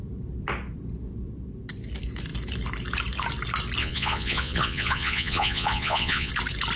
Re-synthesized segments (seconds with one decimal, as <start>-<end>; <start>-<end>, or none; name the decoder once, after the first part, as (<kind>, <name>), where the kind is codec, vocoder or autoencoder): 3.8-6.3 (vocoder, Vocos)